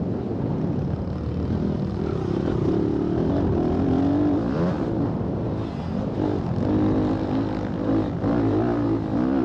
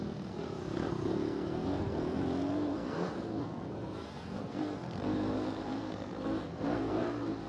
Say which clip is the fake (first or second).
second